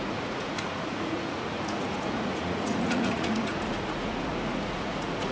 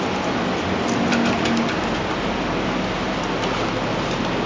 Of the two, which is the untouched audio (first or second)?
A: second